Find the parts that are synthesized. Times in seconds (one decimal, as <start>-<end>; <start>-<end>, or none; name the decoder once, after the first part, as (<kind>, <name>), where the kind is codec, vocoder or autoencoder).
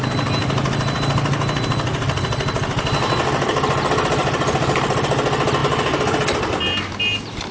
4.2-5.0 (vocoder, BigVGAN v2)